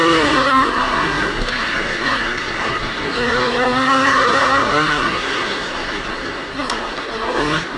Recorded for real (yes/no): no